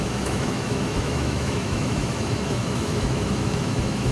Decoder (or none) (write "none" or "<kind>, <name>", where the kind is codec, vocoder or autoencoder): autoencoder, DAC-VAE